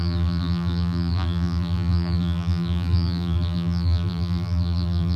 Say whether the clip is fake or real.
fake